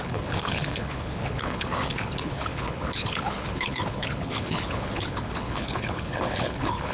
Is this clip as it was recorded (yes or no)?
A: no